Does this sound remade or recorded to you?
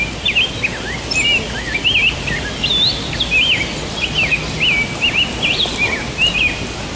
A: recorded